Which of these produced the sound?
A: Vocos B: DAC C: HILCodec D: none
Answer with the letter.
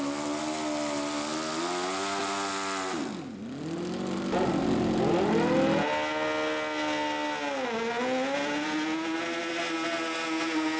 D